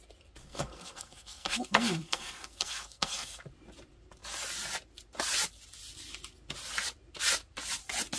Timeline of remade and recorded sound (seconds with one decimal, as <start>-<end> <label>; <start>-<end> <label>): 0.0-0.4 recorded; 0.4-3.4 remade; 3.4-8.2 recorded